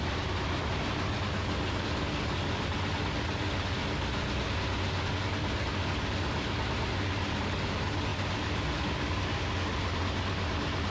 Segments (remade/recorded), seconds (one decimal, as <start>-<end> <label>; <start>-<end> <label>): 0.0-8.1 recorded; 8.1-9.4 remade; 9.4-10.9 recorded